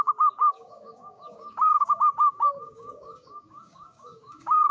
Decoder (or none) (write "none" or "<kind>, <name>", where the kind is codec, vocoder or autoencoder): codec, DAC